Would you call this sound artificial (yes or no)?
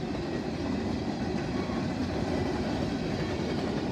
no